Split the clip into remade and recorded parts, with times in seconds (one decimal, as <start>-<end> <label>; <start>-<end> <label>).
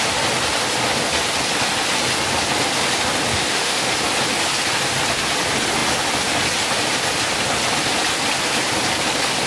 0.0-3.3 recorded; 3.3-3.9 remade; 3.9-9.5 recorded